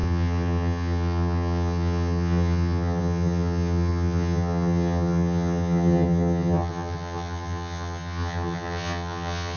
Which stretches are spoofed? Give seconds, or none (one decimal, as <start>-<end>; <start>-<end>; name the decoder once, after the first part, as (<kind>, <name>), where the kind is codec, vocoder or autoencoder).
0.0-9.6 (vocoder, HiFi-GAN)